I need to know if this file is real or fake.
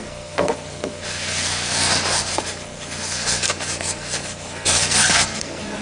fake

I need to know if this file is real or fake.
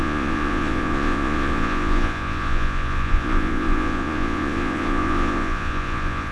fake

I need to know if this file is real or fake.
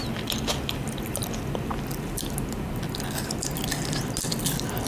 real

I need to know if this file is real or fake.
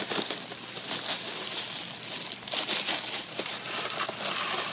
real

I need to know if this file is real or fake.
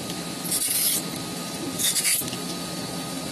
real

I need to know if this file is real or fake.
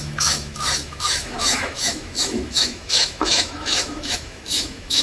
fake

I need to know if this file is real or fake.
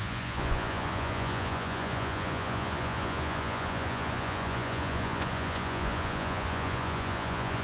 fake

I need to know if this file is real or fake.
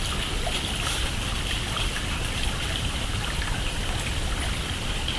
real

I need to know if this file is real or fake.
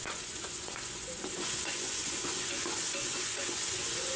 fake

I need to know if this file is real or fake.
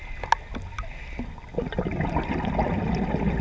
real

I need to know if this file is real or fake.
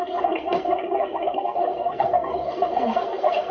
fake